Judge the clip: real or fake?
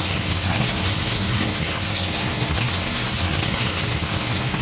fake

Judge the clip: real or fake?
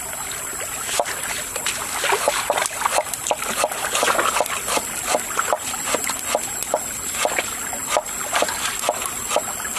real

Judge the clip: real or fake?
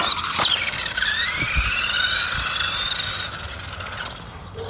real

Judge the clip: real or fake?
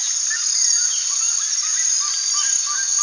real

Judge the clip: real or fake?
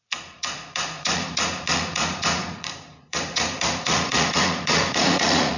fake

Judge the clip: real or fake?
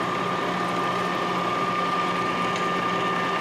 real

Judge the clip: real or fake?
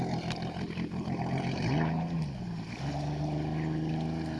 real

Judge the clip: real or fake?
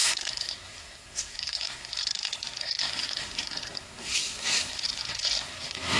fake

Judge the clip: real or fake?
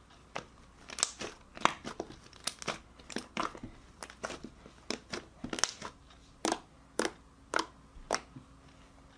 real